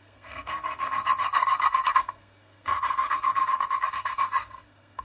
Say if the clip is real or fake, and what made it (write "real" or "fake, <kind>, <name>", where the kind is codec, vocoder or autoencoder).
fake, codec, SNAC